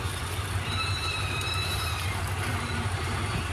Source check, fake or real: fake